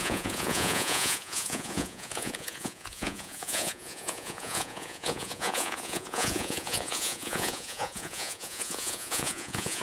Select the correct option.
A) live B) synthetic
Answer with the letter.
B